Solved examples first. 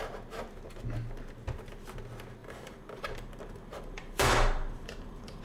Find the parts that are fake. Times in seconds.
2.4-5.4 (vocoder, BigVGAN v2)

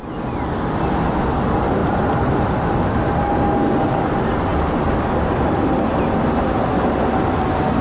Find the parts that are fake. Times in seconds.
0.0-1.0 (vocoder, BigVGAN v2); 1.8-3.0; 4.5-6.4

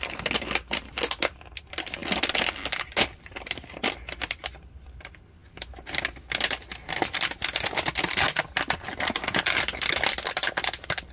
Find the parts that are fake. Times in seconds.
none

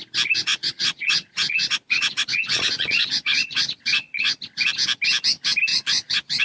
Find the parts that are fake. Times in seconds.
0.5-4.3 (vocoder, Vocos); 5.7-6.4